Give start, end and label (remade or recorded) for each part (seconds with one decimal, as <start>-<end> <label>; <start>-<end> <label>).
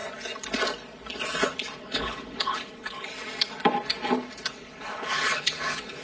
0.0-1.8 recorded; 1.8-3.1 remade; 3.1-4.5 recorded; 4.5-6.0 remade